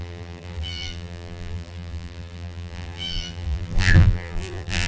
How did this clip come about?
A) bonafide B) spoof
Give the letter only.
B